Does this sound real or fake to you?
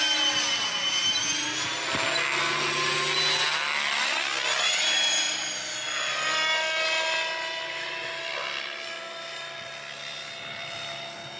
real